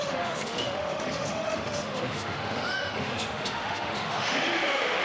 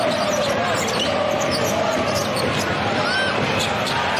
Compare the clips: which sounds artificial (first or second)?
first